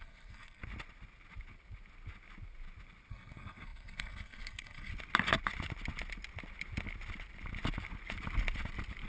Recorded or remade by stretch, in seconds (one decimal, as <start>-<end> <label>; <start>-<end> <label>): 0.0-0.6 remade; 0.6-3.1 recorded; 3.1-4.9 remade; 4.9-9.1 recorded